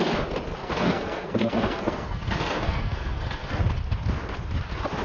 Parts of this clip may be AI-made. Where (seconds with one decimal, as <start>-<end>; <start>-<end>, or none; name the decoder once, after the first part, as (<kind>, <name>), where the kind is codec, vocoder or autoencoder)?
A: 0.6-3.6 (codec, SNAC)